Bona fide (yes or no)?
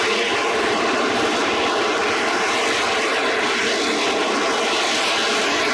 yes